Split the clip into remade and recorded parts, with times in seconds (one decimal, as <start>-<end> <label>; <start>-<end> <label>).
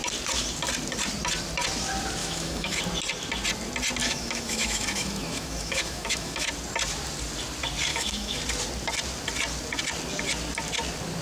0.0-2.2 recorded; 2.2-2.8 remade; 2.8-4.0 recorded; 4.0-6.5 remade; 6.5-7.9 recorded; 7.9-8.4 remade; 8.4-11.2 recorded